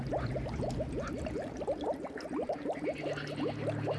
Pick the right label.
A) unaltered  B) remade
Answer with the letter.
A